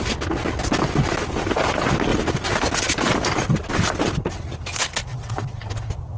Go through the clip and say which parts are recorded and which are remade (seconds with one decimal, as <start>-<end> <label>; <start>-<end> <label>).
0.0-5.1 recorded; 5.1-5.8 remade; 5.8-6.2 recorded